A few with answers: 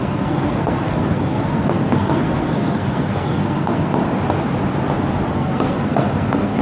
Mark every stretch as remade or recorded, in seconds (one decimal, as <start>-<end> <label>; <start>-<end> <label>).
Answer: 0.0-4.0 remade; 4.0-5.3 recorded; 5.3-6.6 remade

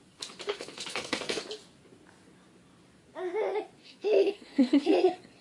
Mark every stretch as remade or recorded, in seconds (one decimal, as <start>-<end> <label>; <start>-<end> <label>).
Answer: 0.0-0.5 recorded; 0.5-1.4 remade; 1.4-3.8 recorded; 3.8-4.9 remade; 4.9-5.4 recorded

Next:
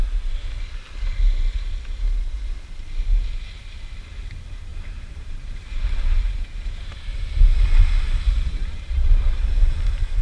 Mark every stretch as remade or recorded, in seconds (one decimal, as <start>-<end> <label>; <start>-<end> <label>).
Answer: 0.0-4.7 recorded; 4.7-10.2 remade

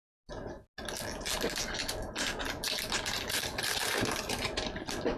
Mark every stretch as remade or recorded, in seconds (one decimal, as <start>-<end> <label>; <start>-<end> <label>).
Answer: 0.0-1.8 recorded; 1.8-5.2 remade

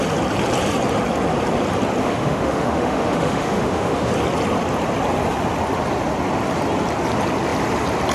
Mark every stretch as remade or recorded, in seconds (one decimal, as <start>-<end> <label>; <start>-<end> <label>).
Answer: 0.0-2.0 recorded; 2.0-4.1 remade; 4.1-8.1 recorded